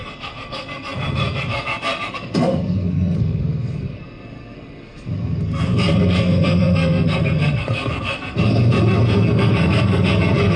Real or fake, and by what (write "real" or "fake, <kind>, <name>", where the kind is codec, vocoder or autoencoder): fake, codec, SNAC